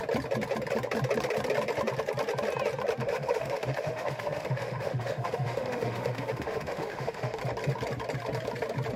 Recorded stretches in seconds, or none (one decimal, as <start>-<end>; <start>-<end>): 0.0-3.0; 7.4-9.0